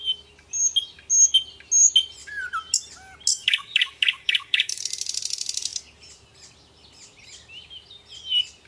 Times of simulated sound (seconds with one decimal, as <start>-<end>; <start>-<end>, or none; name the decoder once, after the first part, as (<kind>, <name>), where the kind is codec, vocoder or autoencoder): 3.3-4.8 (codec, DAC)